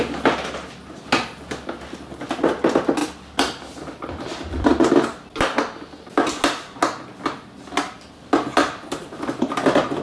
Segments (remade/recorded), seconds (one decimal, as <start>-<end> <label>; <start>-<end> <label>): 0.0-3.0 recorded; 3.0-4.9 remade; 4.9-8.5 recorded; 8.5-9.5 remade; 9.5-10.0 recorded